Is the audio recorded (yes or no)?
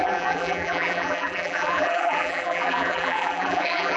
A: no